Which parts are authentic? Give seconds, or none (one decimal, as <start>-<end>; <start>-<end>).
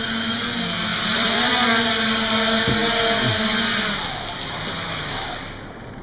0.0-0.9; 1.7-6.0